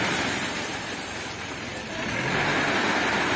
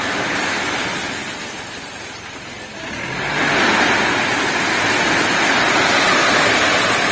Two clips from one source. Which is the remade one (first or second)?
first